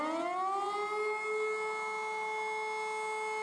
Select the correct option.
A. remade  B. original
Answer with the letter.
B